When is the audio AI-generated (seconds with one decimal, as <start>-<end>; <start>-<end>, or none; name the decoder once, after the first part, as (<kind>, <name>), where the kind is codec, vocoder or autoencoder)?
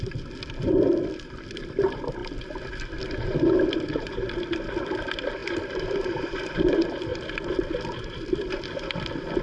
0.0-2.2 (vocoder, BigVGAN v2); 3.0-9.4